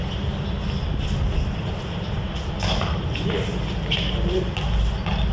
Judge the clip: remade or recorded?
recorded